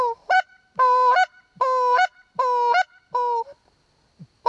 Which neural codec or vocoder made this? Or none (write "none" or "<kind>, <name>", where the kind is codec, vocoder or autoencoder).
none